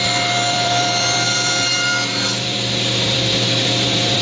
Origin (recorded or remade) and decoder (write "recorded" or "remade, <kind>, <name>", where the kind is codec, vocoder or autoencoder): remade, vocoder, BigVGAN v2